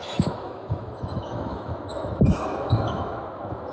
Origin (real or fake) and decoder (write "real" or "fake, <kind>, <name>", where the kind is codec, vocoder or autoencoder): fake, autoencoder, DAC-VAE